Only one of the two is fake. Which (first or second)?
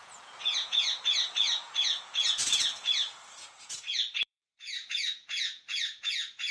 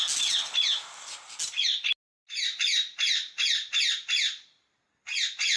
first